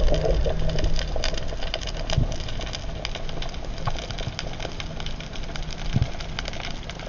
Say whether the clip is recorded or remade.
recorded